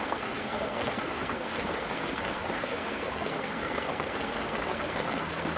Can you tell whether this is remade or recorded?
remade